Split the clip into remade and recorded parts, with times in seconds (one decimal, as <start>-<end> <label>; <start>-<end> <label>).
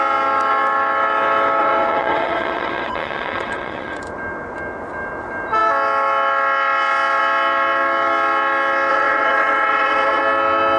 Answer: 0.0-1.6 recorded; 1.6-4.0 remade; 4.0-8.9 recorded; 8.9-10.2 remade; 10.2-10.8 recorded